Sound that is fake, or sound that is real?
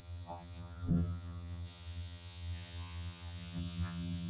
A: fake